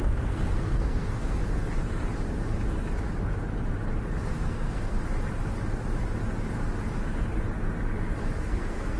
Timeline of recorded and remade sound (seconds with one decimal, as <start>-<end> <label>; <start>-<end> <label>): 0.0-1.4 remade; 1.4-4.3 recorded; 4.3-5.0 remade; 5.0-8.4 recorded; 8.4-9.0 remade